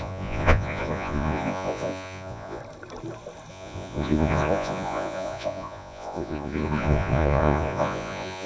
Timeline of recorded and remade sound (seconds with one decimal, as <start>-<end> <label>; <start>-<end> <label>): 0.0-2.6 remade; 2.6-3.5 recorded; 3.5-8.5 remade